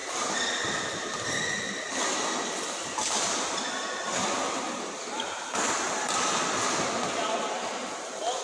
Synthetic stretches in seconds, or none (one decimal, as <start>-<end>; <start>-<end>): none